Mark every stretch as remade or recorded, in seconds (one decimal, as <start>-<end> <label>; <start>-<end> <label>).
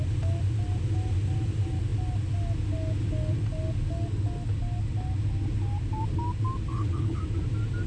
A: 0.0-6.7 recorded; 6.7-7.2 remade; 7.2-7.9 recorded